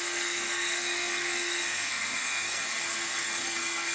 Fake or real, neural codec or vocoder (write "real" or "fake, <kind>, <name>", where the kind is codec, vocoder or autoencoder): fake, codec, SNAC